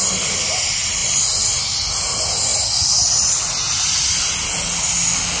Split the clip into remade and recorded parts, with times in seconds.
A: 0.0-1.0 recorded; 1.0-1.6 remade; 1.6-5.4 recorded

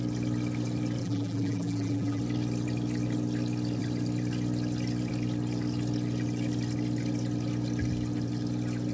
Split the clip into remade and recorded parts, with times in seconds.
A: 0.0-1.0 recorded; 1.0-2.2 remade; 2.2-8.9 recorded

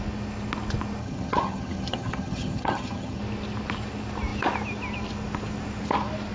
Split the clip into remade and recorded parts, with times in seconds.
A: 0.0-1.0 recorded; 1.0-3.2 remade; 3.2-6.3 recorded

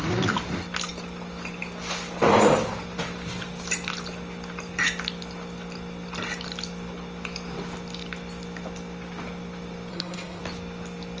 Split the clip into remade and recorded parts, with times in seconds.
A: 0.0-9.9 recorded; 9.9-10.4 remade; 10.4-11.2 recorded

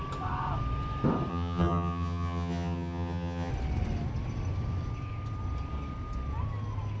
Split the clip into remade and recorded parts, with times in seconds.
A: 0.0-1.3 recorded; 1.3-3.5 remade; 3.5-7.0 recorded